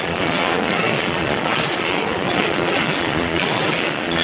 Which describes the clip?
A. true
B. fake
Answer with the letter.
B